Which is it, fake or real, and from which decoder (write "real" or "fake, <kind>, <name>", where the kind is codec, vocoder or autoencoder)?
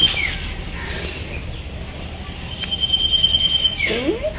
real